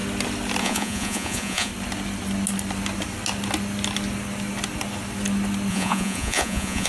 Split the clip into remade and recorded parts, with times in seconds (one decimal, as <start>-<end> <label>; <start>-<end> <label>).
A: 0.0-0.6 recorded; 0.6-1.7 remade; 1.7-5.7 recorded; 5.7-6.9 remade